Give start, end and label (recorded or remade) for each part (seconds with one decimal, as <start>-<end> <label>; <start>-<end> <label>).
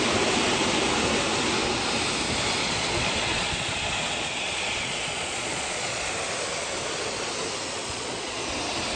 0.0-2.6 recorded; 2.6-6.1 remade; 6.1-7.8 recorded; 7.8-8.5 remade; 8.5-9.0 recorded